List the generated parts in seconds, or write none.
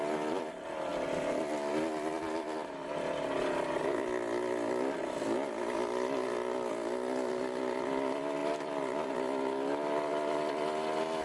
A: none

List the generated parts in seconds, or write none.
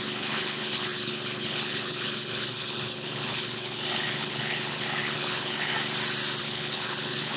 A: 0.0-5.7 (codec, HILCodec); 6.4-7.4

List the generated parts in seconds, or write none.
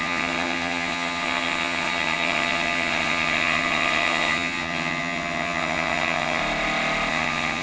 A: 0.0-6.4 (vocoder, HiFi-GAN); 7.1-7.6